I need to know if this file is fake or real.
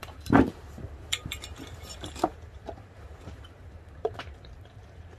fake